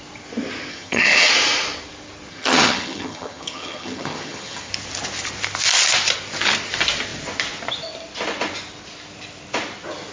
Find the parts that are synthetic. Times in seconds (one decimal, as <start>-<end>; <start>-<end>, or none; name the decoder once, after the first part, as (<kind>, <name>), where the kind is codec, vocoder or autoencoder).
0.7-1.3 (vocoder, HiFi-GAN); 2.3-4.7